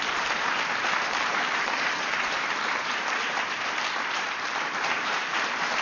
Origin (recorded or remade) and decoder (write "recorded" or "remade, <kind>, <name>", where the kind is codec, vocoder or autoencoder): remade, vocoder, BigVGAN v2